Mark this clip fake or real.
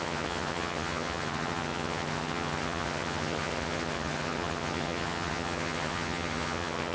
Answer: fake